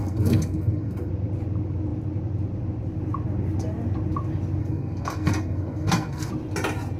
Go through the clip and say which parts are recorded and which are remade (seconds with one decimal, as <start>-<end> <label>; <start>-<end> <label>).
0.0-1.1 remade; 1.1-4.6 recorded; 4.6-6.3 remade; 6.3-7.0 recorded